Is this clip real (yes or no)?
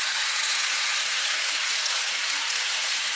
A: no